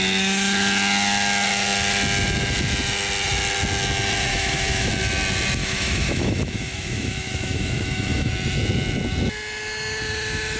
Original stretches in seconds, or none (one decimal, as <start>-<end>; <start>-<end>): 0.0-4.3; 4.9-5.6; 8.3-10.6